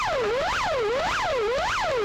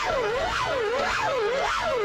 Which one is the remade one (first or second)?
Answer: second